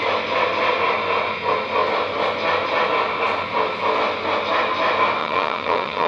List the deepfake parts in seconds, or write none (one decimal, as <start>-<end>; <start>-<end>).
5.2-6.1